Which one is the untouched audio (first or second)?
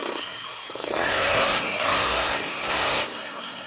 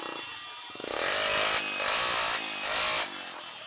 second